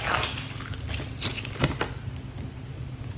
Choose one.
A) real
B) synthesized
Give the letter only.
A